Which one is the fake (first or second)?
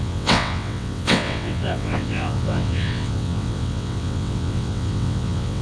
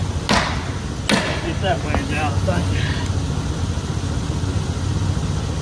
first